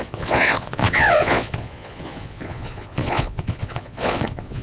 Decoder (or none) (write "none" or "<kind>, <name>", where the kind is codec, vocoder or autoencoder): vocoder, Vocos